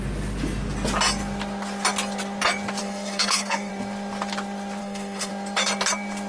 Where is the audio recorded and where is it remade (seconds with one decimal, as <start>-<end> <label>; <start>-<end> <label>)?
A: 0.0-2.8 recorded; 2.8-3.7 remade; 3.7-4.8 recorded; 4.8-5.3 remade; 5.3-6.3 recorded